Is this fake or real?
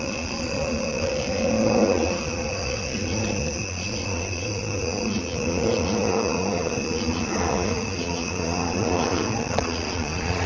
fake